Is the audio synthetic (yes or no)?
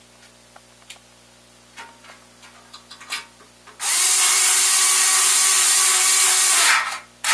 no